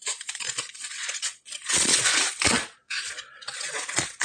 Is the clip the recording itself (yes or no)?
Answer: no